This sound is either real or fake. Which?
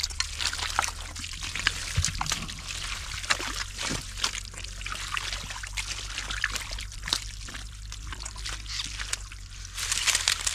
real